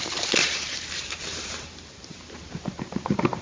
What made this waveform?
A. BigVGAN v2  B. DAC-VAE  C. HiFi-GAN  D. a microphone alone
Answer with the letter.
A